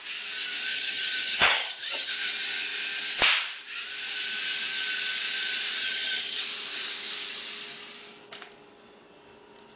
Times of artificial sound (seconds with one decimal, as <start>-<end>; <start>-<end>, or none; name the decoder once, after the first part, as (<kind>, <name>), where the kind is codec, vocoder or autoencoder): 0.7-2.1 (vocoder, HiFi-GAN); 5.8-6.4